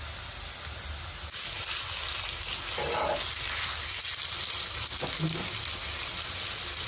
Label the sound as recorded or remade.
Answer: recorded